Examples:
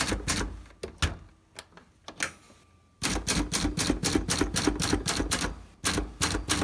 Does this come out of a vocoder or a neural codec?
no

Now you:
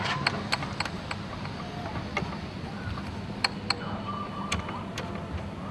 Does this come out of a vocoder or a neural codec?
no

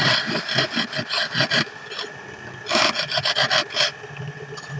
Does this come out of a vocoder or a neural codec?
no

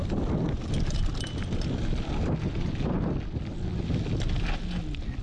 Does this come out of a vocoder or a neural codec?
no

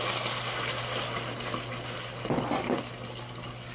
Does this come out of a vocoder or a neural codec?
no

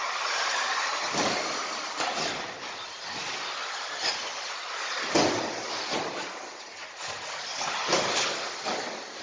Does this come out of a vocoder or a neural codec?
no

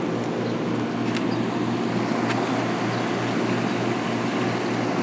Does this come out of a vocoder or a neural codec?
no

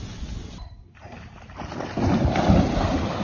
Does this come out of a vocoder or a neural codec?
no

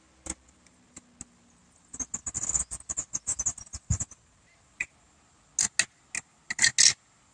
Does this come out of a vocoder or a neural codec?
no